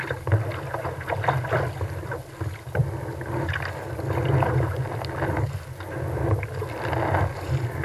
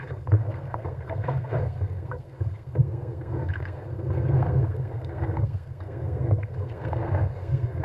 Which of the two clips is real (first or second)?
first